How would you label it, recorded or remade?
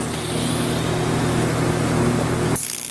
recorded